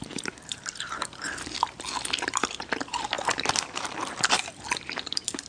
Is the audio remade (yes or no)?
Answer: yes